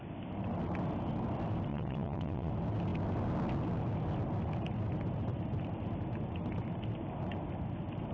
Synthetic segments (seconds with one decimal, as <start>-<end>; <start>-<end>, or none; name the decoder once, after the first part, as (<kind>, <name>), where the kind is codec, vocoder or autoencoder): 1.7-2.5 (vocoder, Vocos)